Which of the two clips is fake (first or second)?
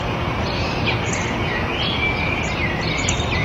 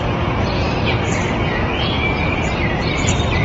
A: second